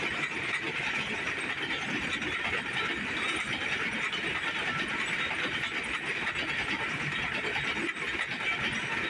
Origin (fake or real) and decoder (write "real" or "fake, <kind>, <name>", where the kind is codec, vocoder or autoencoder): real